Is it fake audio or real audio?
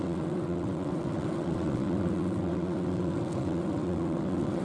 fake